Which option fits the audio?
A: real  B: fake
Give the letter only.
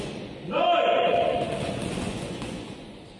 B